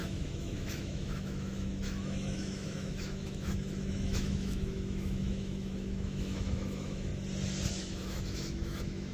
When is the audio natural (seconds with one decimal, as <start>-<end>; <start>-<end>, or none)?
7.1-7.7